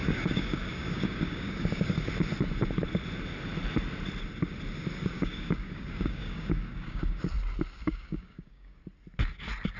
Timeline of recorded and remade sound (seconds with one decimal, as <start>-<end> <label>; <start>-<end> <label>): 0.0-2.1 remade; 2.1-5.0 recorded; 5.0-7.2 remade; 7.2-7.8 recorded; 7.8-8.8 remade; 8.8-9.8 recorded